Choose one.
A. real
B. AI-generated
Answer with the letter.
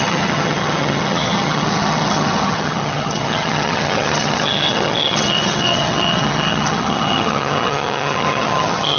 B